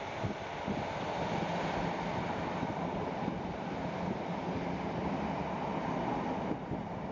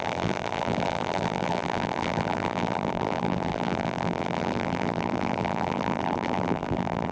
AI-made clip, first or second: second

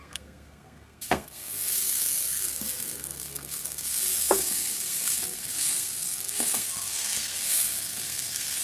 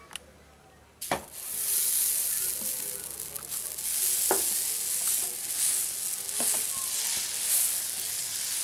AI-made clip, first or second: first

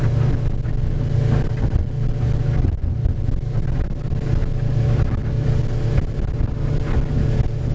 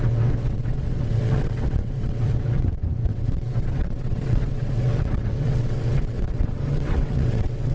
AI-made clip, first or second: second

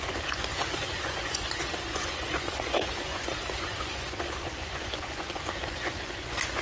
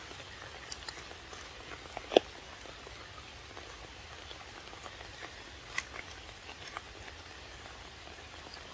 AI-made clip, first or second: first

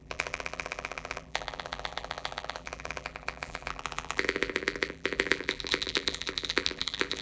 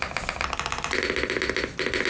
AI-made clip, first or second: first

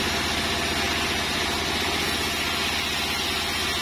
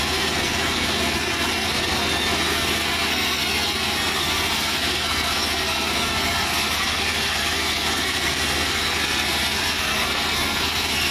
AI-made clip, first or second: second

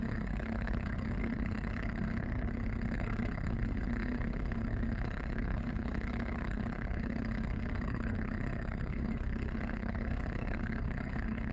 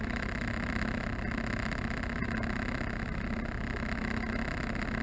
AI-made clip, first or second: first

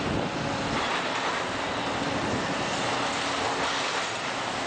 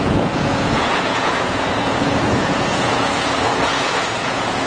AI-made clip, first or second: second